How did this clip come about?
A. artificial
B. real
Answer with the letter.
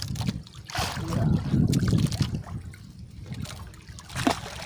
B